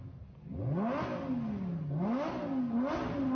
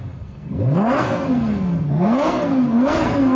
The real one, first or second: first